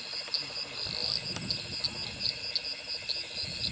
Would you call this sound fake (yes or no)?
no